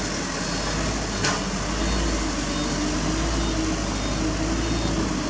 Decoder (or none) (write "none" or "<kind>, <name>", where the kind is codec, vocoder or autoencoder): none